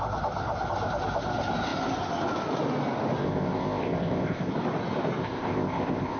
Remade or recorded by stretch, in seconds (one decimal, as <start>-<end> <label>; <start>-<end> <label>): 0.0-3.2 recorded; 3.2-4.5 remade; 4.5-5.2 recorded; 5.2-6.2 remade